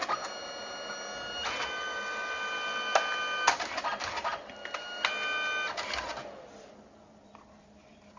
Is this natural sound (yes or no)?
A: yes